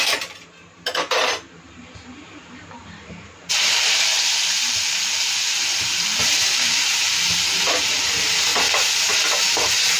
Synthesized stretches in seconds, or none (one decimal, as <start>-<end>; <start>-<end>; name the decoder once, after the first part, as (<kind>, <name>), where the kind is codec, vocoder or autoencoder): 0.0-8.5 (vocoder, BigVGAN v2); 9.1-10.0

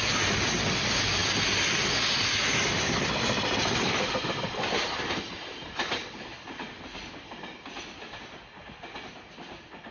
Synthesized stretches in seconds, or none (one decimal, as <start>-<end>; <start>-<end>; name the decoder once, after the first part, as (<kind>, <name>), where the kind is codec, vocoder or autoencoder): none